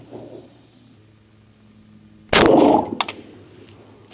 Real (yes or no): yes